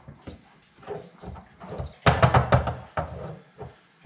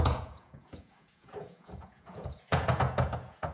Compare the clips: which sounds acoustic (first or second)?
first